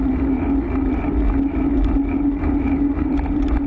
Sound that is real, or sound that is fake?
real